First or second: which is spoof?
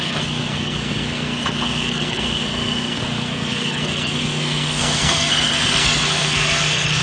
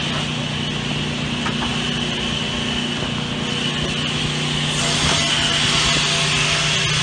first